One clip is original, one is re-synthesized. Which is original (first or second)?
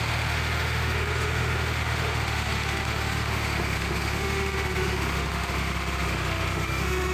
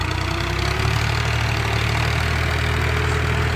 second